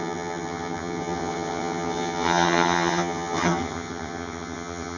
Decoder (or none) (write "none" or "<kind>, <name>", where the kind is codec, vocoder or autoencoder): vocoder, HiFi-GAN